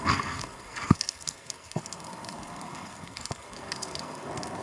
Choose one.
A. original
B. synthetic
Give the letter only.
B